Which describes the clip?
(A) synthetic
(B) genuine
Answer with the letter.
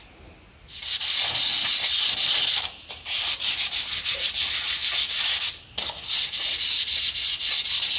B